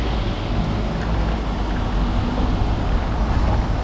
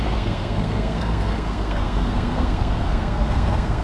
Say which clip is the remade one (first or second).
second